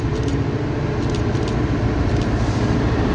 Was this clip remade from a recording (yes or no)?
no